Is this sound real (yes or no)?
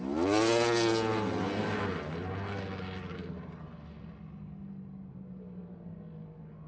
yes